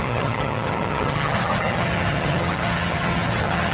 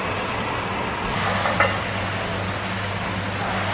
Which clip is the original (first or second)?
second